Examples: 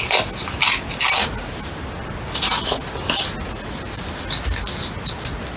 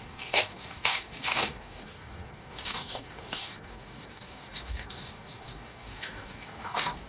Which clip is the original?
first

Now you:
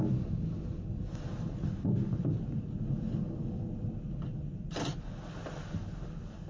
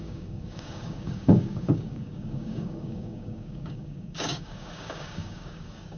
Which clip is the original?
first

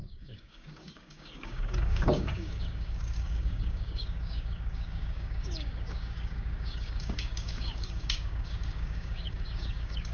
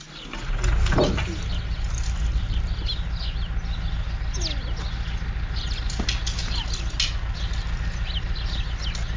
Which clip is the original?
second